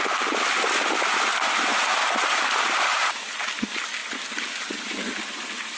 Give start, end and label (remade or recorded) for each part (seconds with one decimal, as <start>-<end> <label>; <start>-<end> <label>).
0.0-5.8 recorded